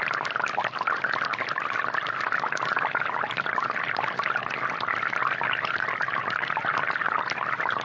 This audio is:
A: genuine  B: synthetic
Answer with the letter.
A